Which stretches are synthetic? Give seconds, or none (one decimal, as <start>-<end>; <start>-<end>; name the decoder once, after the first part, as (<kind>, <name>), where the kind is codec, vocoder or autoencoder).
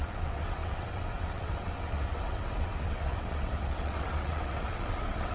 0.0-5.3 (vocoder, WaveNeXt)